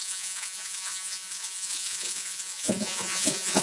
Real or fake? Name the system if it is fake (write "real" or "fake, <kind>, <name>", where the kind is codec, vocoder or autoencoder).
fake, vocoder, Vocos